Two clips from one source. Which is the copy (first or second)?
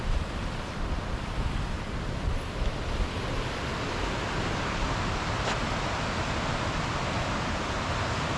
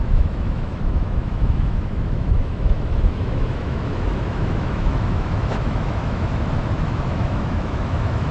second